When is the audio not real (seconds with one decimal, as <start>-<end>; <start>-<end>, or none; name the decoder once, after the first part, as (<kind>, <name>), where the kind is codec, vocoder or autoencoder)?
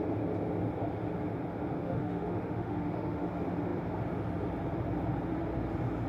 1.8-3.3 (autoencoder, DAC-VAE)